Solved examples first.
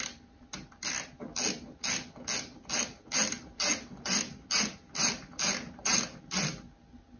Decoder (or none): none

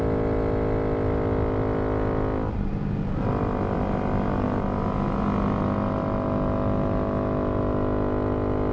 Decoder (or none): none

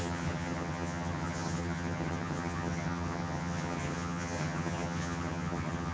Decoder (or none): vocoder, HiFi-GAN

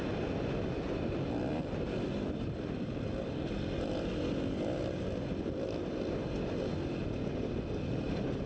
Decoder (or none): none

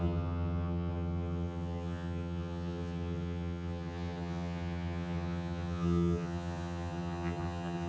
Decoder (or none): vocoder, HiFi-GAN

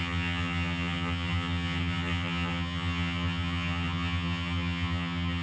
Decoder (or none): vocoder, HiFi-GAN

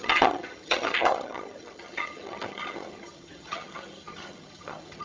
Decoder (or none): vocoder, HiFi-GAN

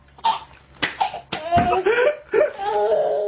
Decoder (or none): none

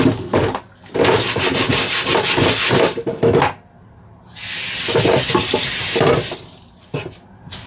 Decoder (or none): none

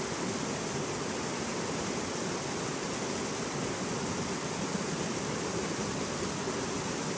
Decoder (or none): none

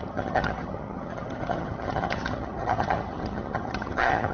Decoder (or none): vocoder, HiFi-GAN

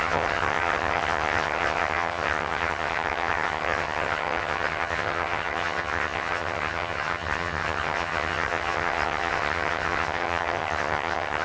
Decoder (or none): vocoder, HiFi-GAN